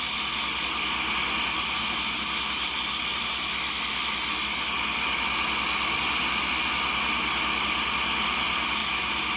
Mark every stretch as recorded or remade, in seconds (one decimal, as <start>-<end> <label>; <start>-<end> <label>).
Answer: 0.0-8.8 recorded; 8.8-9.4 remade